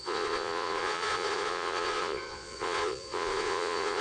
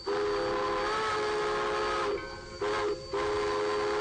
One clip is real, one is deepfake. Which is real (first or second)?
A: second